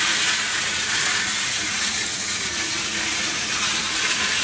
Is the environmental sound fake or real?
fake